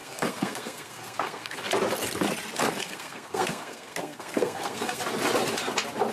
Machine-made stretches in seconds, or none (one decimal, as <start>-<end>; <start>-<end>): 0.0-1.6; 2.8-5.0